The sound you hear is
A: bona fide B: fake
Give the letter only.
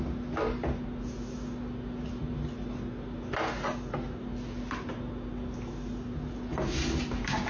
A